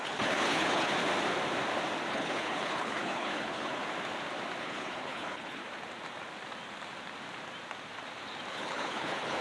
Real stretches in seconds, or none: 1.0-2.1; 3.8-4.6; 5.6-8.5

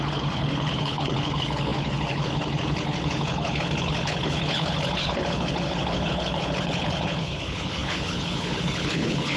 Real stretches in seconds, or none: none

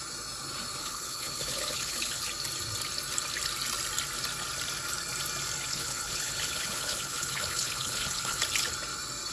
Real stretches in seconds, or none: 0.0-0.8; 2.2-5.7; 8.4-9.3

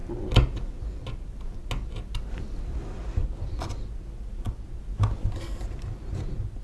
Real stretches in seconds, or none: 0.0-6.6

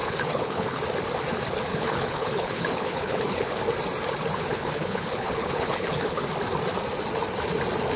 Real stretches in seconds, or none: 0.8-1.7; 3.6-4.5; 6.2-8.0

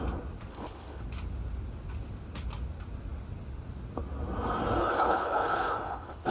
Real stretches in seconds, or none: 0.0-0.5; 1.0-4.8

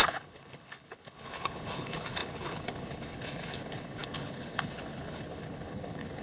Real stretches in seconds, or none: none

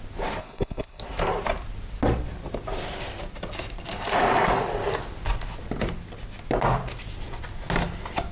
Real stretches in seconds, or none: 0.0-0.4; 1.0-8.3